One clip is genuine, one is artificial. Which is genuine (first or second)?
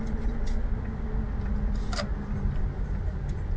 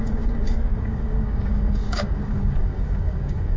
first